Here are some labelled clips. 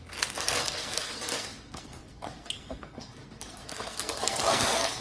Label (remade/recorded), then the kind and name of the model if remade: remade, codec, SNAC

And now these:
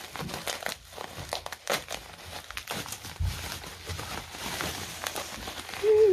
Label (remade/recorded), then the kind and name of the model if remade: recorded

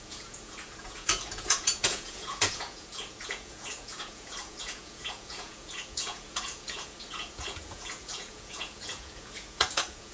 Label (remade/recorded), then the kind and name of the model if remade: remade, vocoder, Vocos